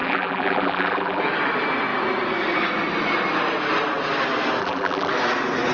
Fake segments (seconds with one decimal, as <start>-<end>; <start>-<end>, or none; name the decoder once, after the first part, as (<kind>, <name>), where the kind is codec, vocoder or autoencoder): 0.0-1.2 (vocoder, BigVGAN v2); 4.6-5.1